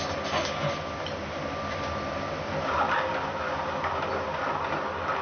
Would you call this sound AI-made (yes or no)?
no